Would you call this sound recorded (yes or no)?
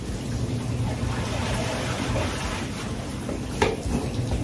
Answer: yes